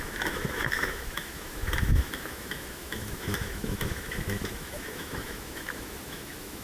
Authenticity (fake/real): fake